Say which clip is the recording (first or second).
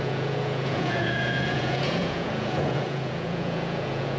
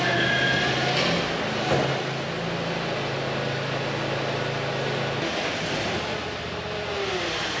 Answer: second